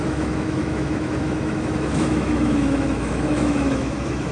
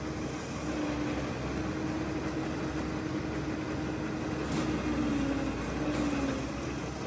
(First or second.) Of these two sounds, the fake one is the first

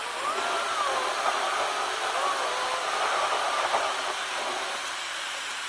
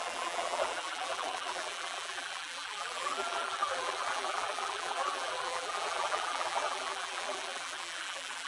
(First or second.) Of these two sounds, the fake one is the second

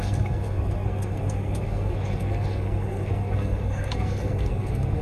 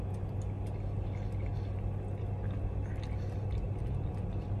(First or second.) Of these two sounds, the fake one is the first